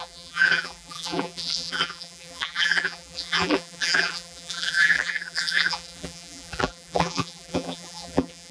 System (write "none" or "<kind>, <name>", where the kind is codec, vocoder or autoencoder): vocoder, BigVGAN v2